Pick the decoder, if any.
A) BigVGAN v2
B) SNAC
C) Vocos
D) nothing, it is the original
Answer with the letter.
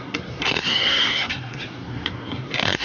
B